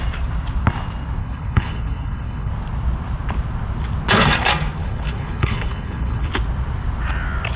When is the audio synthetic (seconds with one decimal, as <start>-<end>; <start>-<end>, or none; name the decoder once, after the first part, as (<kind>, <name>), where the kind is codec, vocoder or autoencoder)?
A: 1.2-2.5 (codec, HILCodec); 4.8-6.3